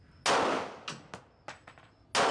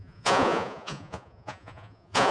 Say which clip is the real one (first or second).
first